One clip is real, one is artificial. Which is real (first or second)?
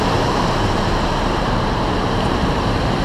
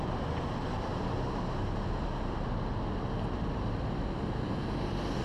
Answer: second